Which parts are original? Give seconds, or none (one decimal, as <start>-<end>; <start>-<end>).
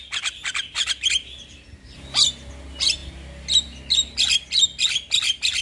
0.0-5.6